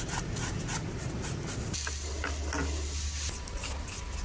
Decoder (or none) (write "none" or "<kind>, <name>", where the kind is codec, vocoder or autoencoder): none